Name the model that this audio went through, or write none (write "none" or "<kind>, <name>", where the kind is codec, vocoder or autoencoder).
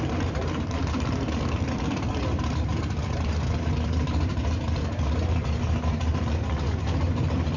vocoder, BigVGAN v2